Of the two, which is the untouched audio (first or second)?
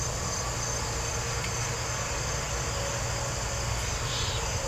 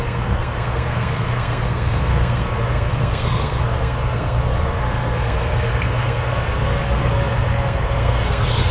first